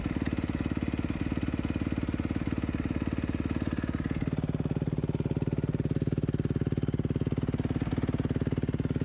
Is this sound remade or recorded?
recorded